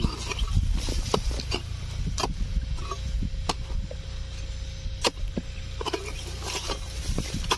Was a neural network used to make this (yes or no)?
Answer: no